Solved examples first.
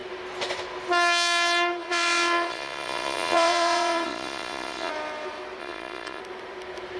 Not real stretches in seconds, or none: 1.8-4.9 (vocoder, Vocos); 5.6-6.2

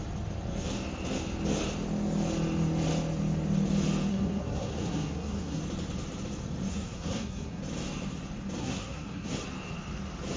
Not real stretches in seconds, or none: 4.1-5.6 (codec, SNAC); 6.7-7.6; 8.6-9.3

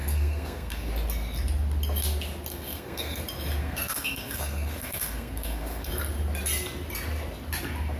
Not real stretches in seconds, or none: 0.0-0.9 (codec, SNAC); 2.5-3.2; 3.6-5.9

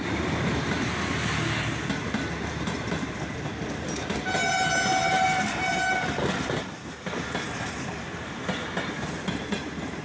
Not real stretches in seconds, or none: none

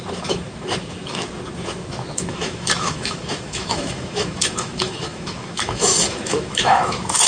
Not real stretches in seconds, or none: 0.0-7.3 (autoencoder, DAC-VAE)

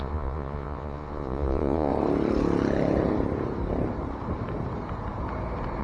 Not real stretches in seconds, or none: 0.0-1.9 (vocoder, Vocos)

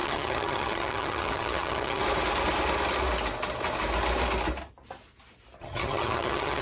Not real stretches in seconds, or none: 0.0-2.0 (vocoder, HiFi-GAN); 5.6-6.6

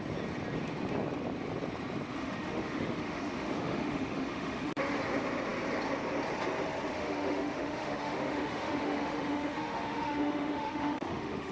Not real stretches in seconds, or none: 2.2-5.0 (autoencoder, DAC-VAE); 6.9-11.5